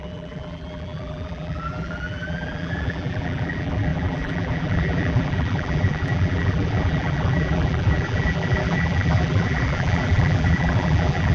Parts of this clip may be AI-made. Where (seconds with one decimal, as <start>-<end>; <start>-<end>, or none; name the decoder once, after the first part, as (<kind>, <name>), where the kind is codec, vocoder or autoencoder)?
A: 0.0-11.3 (vocoder, BigVGAN v2)

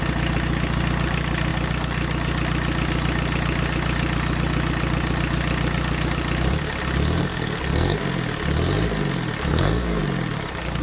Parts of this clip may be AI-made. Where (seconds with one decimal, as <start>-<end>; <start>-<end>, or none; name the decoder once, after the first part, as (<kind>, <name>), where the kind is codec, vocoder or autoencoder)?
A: 7.2-8.0 (codec, SNAC); 9.5-10.0